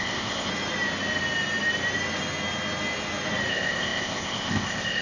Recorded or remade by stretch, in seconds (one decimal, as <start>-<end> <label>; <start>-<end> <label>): 0.0-0.5 remade; 0.5-3.5 recorded; 3.5-5.0 remade